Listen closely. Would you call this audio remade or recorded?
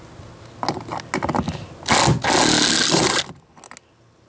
recorded